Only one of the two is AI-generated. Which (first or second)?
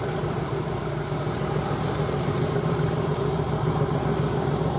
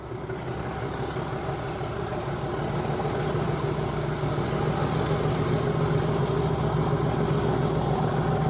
first